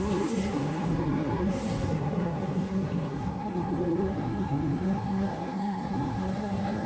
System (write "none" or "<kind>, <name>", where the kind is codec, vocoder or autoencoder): codec, SNAC